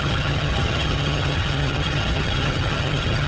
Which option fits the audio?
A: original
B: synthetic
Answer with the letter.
B